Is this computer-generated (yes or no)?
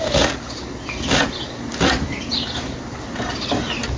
no